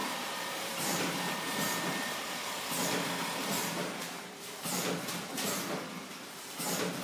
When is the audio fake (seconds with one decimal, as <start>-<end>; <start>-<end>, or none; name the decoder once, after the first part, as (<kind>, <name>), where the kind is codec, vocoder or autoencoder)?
0.0-2.6 (vocoder, BigVGAN v2); 3.6-4.5